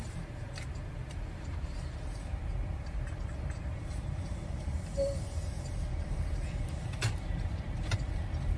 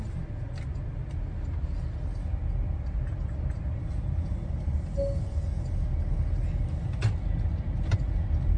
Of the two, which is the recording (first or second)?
second